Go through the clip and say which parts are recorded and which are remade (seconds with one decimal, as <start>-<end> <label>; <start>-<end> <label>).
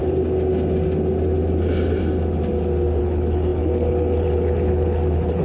0.0-3.0 recorded; 3.0-5.4 remade